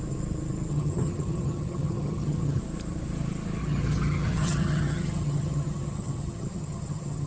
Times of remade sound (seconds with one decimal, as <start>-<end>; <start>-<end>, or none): 0.7-2.6; 3.6-7.3